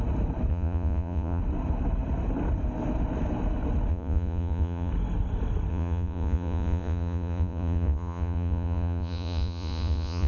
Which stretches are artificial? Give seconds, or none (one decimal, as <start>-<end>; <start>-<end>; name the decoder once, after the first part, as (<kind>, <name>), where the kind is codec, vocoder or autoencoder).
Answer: 0.5-1.4 (vocoder, Vocos); 3.9-4.9; 5.7-10.3